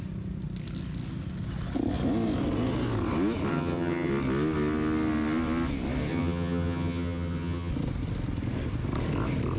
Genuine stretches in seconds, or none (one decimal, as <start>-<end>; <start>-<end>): 0.0-3.5; 4.1-6.1; 7.7-9.6